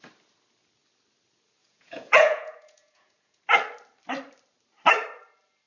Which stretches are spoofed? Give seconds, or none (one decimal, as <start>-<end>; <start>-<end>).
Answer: 1.6-3.4